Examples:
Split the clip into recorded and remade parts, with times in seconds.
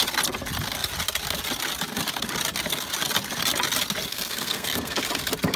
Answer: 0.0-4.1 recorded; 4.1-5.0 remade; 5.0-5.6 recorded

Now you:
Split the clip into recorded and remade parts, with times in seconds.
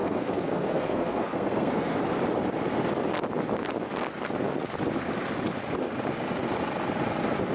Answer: 0.0-2.0 remade; 2.0-7.5 recorded